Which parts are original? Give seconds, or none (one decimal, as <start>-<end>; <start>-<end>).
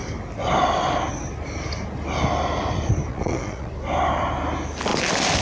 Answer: 0.0-3.1; 3.7-5.4